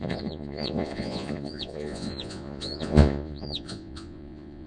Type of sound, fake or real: fake